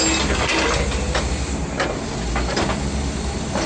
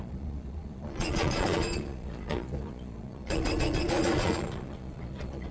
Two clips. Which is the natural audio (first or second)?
first